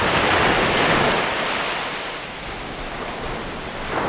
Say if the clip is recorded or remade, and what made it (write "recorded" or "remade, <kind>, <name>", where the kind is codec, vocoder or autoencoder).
recorded